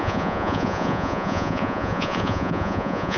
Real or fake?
fake